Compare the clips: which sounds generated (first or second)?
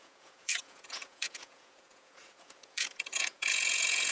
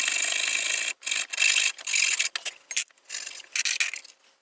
first